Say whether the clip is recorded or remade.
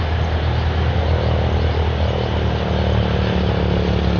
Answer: recorded